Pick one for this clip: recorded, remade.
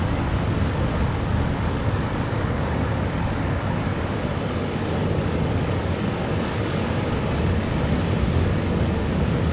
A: remade